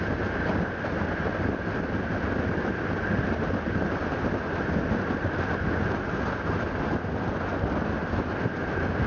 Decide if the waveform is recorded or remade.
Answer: recorded